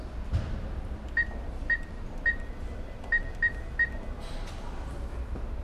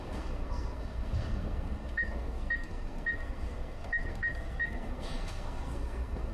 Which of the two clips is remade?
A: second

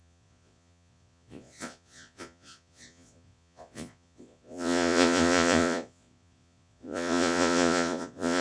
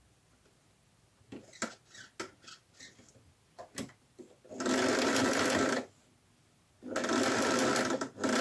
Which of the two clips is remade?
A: first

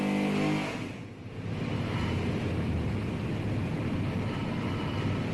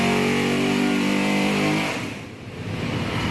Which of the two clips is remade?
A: second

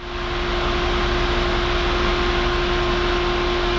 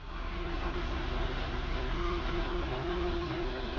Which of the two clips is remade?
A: second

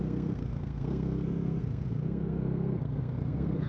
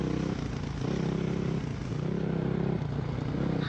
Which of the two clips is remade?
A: first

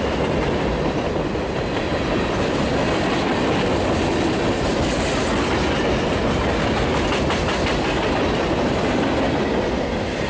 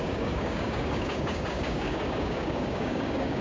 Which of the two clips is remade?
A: second